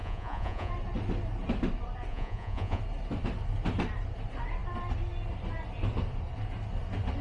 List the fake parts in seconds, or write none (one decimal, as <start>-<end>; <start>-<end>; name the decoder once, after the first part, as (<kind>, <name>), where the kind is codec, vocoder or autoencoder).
0.0-0.7 (vocoder, Vocos); 2.1-2.8

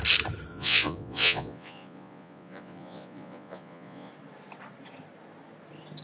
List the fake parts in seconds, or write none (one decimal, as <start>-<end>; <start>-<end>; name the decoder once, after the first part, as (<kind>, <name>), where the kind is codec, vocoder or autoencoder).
0.5-4.1 (vocoder, Vocos)